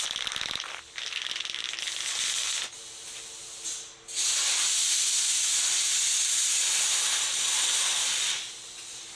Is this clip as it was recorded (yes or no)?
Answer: yes